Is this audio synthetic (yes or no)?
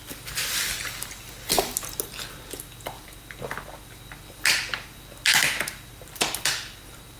no